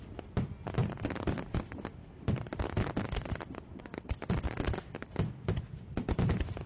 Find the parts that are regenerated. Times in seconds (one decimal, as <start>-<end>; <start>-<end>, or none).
none